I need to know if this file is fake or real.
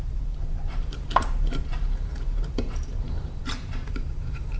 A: fake